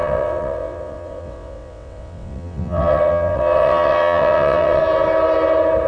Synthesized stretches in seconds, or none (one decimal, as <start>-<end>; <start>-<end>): 0.0-4.8